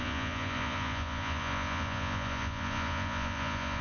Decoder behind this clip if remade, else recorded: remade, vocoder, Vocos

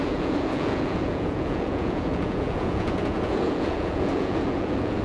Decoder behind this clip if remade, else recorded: remade, vocoder, Vocos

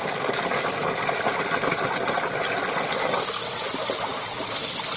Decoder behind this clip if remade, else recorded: recorded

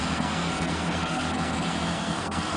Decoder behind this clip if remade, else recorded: remade, codec, SNAC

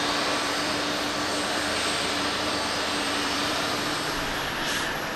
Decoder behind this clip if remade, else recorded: remade, vocoder, BigVGAN v2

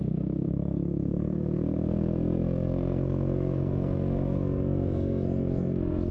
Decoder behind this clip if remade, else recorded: remade, codec, SNAC